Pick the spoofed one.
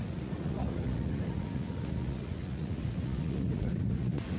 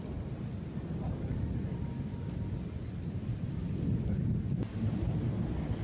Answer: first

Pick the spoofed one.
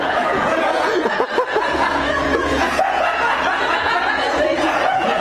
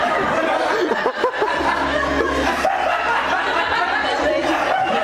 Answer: first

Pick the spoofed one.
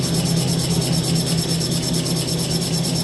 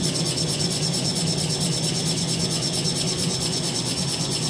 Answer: second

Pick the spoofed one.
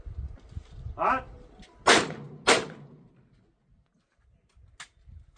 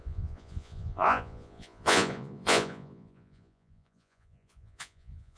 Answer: second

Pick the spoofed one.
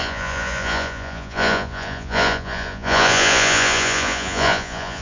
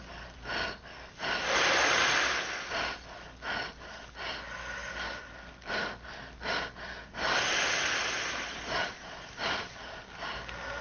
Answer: first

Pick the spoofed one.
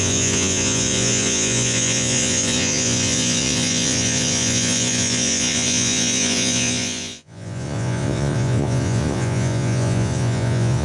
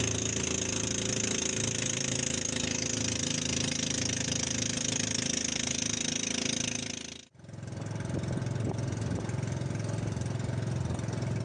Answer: first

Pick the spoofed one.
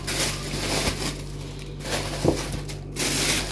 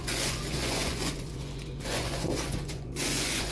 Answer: second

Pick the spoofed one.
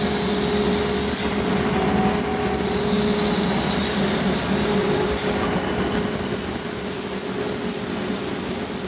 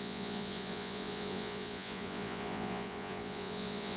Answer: second